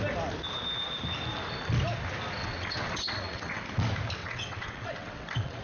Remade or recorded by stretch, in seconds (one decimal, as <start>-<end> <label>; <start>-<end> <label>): 0.0-2.4 recorded; 2.4-3.6 remade; 3.6-4.2 recorded; 4.2-5.6 remade